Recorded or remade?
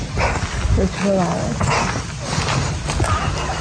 recorded